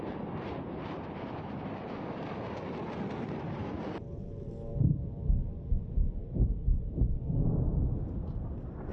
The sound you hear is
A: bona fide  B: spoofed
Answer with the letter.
B